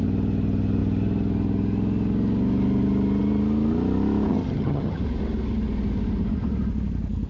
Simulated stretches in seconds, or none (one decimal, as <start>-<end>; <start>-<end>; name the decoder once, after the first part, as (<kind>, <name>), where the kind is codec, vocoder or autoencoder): 4.3-5.0 (vocoder, HiFi-GAN)